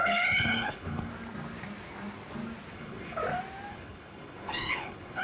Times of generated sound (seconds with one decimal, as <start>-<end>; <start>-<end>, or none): 0.0-1.1; 2.7-3.2; 3.7-5.2